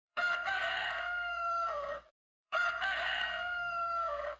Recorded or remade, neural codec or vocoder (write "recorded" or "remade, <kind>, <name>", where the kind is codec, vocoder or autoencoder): remade, codec, SNAC